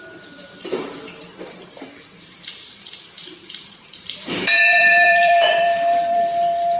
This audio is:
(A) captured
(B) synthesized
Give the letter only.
B